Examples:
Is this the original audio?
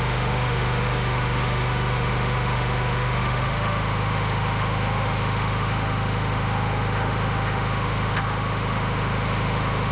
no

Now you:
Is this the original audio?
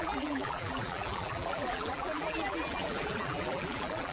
no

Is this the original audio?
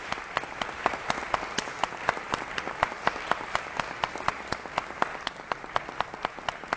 yes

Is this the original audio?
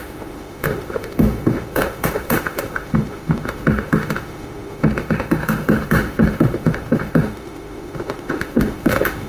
no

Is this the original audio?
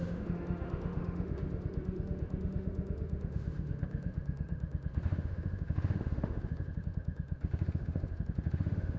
no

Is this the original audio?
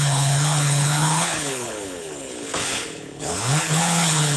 no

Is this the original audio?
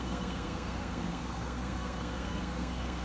no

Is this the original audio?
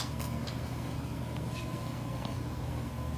no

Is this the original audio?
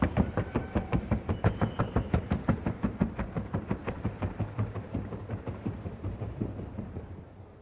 no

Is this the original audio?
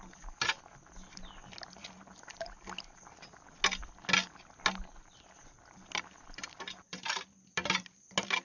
yes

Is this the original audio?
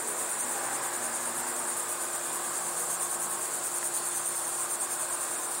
yes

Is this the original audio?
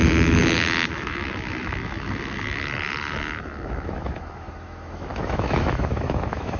no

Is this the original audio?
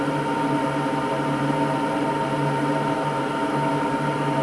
yes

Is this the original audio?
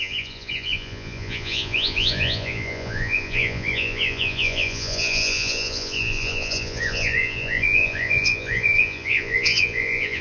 no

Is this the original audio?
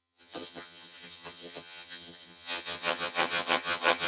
no